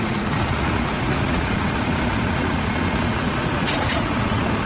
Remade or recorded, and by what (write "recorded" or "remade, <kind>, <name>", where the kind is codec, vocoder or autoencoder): remade, vocoder, Vocos